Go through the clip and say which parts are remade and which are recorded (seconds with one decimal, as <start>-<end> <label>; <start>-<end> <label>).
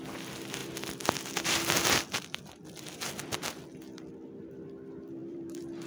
0.0-5.2 recorded; 5.2-5.9 remade